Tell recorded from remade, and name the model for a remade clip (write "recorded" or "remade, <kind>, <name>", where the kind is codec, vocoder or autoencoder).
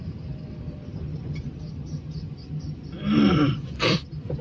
recorded